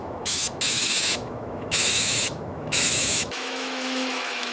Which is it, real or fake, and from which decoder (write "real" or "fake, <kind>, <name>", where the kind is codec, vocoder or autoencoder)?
fake, autoencoder, DAC-VAE